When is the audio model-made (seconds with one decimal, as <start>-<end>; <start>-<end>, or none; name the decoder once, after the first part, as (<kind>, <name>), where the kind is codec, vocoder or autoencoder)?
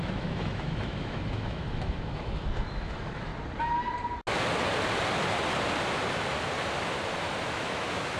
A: 0.0-3.3 (autoencoder, DAC-VAE); 7.5-8.2